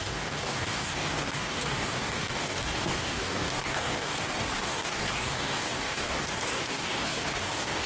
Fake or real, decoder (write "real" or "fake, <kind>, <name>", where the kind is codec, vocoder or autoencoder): fake, codec, DAC